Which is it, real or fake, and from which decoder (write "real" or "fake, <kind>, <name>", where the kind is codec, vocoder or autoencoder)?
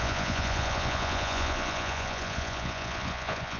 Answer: fake, vocoder, Vocos